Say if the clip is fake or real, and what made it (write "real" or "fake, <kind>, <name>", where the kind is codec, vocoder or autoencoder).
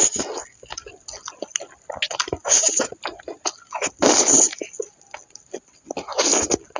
real